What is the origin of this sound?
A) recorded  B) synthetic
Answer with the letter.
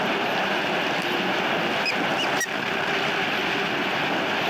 A